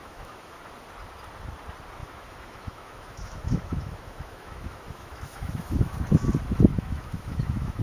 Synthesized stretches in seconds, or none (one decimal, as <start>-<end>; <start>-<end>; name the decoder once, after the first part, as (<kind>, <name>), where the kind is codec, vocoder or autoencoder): 0.0-0.6 (autoencoder, DAC-VAE); 2.0-6.3; 6.7-7.8